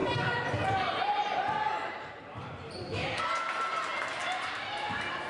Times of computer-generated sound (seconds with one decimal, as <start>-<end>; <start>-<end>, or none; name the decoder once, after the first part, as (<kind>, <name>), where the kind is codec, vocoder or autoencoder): 0.0-3.2 (vocoder, BigVGAN v2); 4.2-5.3